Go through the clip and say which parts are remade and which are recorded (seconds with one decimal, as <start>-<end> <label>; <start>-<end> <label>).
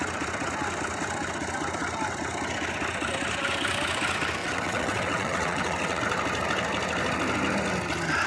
0.0-4.4 recorded; 4.4-6.0 remade; 6.0-8.3 recorded